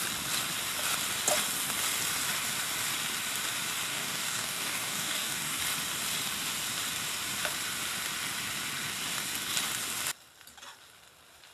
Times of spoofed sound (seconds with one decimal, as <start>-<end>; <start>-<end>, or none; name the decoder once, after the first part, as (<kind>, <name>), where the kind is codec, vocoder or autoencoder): 3.9-5.6 (codec, DAC)

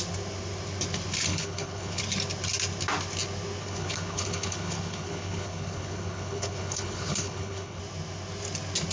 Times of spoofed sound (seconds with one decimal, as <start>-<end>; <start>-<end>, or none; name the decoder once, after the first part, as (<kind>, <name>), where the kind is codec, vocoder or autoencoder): 1.3-2.0 (codec, HILCodec); 3.6-7.8

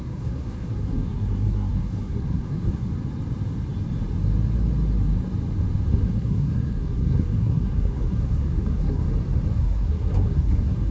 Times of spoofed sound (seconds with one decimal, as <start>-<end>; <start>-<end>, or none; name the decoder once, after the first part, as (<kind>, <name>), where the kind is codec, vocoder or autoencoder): 0.0-2.9 (codec, SNAC); 5.9-9.0; 9.5-10.9

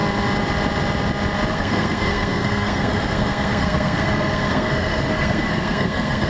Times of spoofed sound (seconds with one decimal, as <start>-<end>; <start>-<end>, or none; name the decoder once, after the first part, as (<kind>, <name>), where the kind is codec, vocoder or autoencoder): 1.5-6.3 (codec, SNAC)

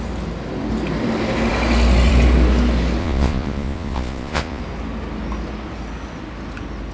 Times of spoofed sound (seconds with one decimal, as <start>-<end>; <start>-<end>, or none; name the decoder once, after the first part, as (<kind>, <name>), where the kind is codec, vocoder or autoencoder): 3.0-4.6 (vocoder, Vocos)

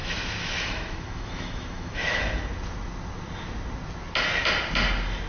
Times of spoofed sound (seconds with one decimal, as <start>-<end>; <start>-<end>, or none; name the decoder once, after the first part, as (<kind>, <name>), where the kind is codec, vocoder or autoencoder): 0.0-2.2 (autoencoder, DAC-VAE)